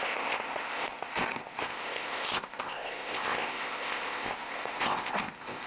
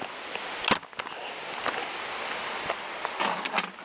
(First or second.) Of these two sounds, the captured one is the second